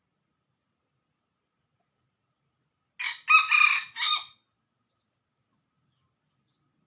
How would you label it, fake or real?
real